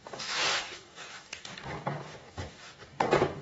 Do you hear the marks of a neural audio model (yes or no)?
yes